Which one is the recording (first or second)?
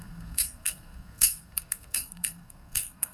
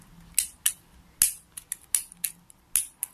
second